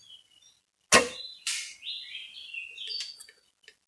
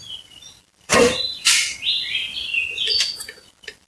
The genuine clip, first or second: first